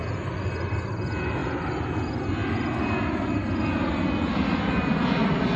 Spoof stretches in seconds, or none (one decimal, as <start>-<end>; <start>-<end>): none